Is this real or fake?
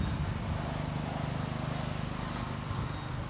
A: real